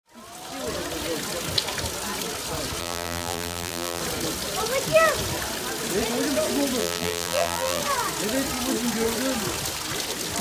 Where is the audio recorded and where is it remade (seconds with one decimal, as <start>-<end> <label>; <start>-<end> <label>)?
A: 0.0-2.8 recorded; 2.8-4.0 remade; 4.0-6.8 recorded; 6.8-7.8 remade; 7.8-10.4 recorded